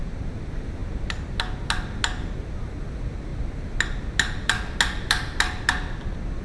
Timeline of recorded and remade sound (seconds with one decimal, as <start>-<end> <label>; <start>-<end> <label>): 0.0-6.4 recorded

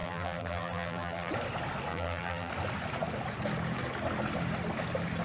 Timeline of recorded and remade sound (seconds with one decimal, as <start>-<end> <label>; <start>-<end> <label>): 0.0-1.3 remade; 1.3-1.9 recorded; 1.9-2.5 remade; 2.5-5.2 recorded

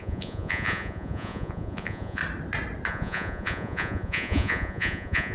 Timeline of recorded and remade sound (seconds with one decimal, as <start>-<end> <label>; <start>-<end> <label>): 0.0-2.2 remade; 2.2-2.9 recorded; 2.9-5.3 remade

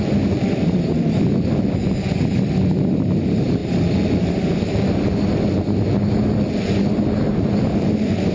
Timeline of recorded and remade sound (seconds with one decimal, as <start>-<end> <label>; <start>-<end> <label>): 0.0-8.3 recorded

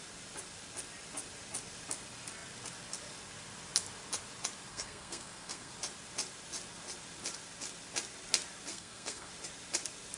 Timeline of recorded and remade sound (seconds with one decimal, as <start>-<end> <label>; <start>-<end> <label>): 0.0-4.7 recorded; 4.7-5.7 remade; 5.7-8.7 recorded; 8.7-9.3 remade; 9.3-10.2 recorded

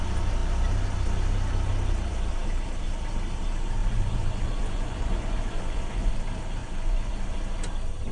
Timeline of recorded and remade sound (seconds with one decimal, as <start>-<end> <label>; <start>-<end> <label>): 0.0-3.8 recorded; 3.8-6.1 remade; 6.1-6.6 recorded; 6.6-7.1 remade; 7.1-8.1 recorded